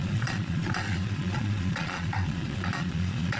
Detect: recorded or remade remade